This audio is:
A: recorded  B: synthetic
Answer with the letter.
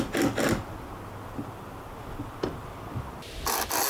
A